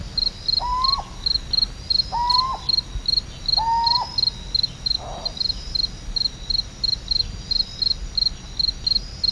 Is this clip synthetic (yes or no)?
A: no